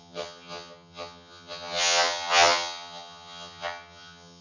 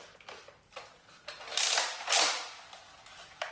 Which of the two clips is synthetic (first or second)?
first